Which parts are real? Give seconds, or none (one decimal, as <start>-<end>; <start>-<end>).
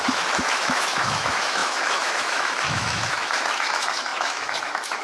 none